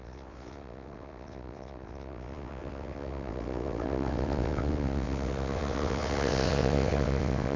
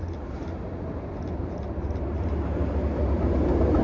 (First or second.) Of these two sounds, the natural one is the second